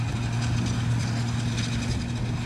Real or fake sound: real